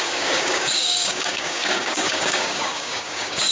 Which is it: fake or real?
fake